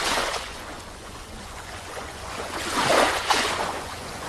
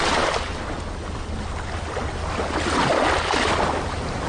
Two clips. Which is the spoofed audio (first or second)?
first